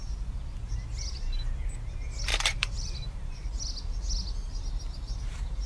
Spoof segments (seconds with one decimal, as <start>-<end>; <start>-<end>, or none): 2.3-3.3